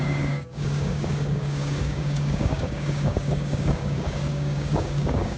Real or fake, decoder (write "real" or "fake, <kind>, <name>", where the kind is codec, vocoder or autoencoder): fake, codec, DAC